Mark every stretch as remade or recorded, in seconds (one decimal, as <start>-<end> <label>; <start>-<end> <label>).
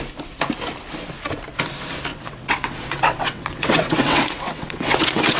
0.0-2.1 recorded; 2.1-5.4 remade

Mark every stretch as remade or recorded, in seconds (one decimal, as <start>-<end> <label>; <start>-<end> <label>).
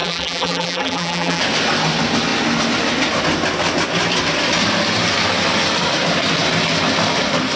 0.0-1.4 remade; 1.4-7.6 recorded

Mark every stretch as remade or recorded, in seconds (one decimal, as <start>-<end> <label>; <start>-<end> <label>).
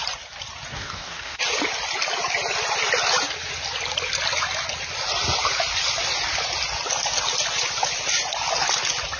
0.0-0.7 recorded; 0.7-1.4 remade; 1.4-9.2 recorded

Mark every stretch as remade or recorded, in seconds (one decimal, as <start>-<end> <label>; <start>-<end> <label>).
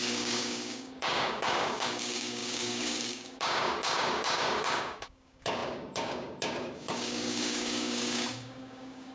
0.0-9.1 remade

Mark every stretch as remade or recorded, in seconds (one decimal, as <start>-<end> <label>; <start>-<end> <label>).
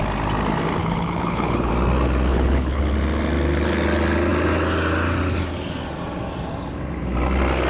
0.0-0.8 recorded; 0.8-1.7 remade; 1.7-2.3 recorded; 2.3-2.8 remade; 2.8-7.7 recorded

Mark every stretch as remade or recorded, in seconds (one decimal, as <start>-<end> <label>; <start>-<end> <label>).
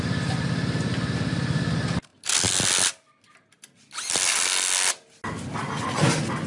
0.0-6.5 recorded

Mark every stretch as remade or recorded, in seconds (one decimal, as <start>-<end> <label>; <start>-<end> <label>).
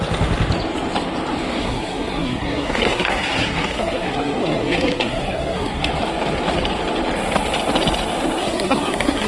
0.0-1.6 recorded; 1.6-5.9 remade; 5.9-8.4 recorded; 8.4-9.3 remade